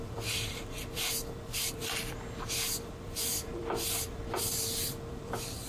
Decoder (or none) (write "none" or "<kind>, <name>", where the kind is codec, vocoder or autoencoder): vocoder, BigVGAN v2